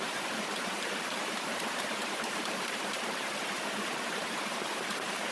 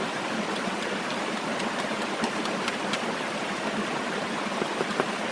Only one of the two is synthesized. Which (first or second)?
first